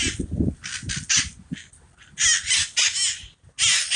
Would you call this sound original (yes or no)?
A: yes